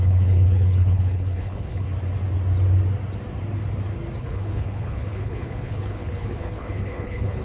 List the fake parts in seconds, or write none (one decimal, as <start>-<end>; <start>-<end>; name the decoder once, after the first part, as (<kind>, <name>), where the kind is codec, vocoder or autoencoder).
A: 0.0-1.9 (codec, HILCodec); 4.2-7.4